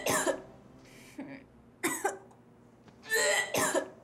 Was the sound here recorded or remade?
recorded